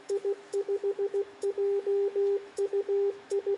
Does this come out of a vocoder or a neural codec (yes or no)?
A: yes